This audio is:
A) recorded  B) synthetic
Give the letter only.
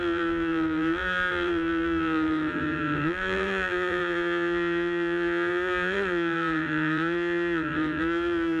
B